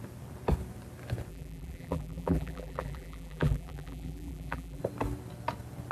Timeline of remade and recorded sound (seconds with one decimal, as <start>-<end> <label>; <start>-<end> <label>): 0.0-1.3 recorded; 1.3-4.8 remade; 4.8-5.9 recorded